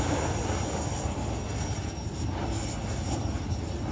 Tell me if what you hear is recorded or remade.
recorded